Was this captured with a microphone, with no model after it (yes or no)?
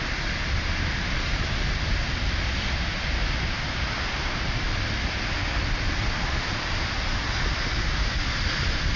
yes